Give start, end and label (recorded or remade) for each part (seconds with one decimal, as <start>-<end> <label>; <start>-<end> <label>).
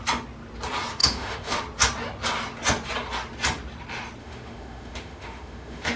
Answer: 0.0-1.0 recorded; 1.0-1.6 remade; 1.6-4.2 recorded; 4.2-6.0 remade